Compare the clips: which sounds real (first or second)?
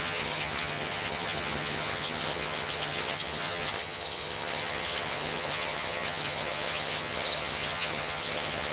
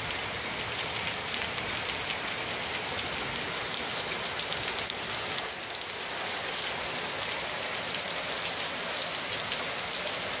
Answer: second